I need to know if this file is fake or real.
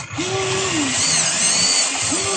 real